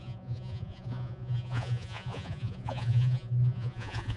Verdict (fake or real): fake